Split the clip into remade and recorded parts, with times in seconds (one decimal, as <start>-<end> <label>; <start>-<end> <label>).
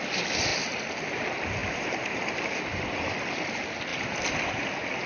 0.0-5.1 recorded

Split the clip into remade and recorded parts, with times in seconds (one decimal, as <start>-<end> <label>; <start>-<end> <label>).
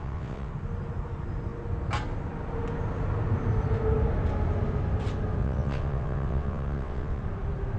0.0-0.5 remade; 0.5-5.4 recorded; 5.4-7.2 remade; 7.2-7.8 recorded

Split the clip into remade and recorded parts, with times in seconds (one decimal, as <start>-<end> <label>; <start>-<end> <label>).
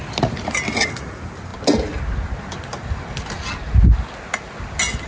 0.0-5.1 recorded